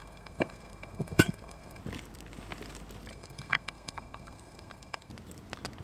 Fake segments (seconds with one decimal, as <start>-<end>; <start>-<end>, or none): 0.0-1.8; 3.1-5.1